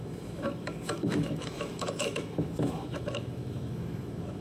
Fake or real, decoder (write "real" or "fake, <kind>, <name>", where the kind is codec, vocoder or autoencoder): fake, autoencoder, DAC-VAE